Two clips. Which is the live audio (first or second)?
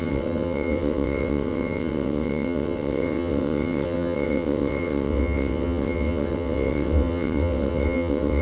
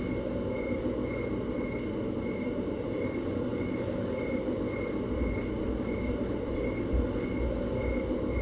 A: second